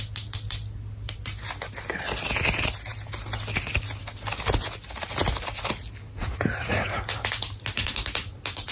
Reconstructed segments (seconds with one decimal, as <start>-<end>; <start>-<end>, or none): 6.2-7.0